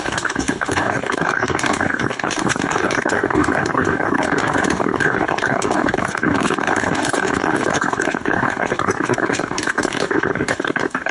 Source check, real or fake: fake